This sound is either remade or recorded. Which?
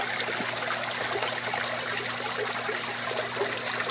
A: recorded